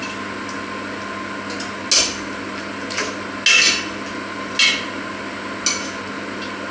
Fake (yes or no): no